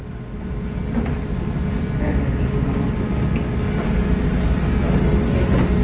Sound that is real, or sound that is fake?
real